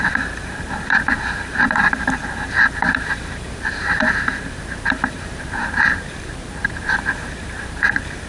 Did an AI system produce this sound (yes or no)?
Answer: yes